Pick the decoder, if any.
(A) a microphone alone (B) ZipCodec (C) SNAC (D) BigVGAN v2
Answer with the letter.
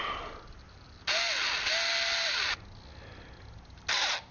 A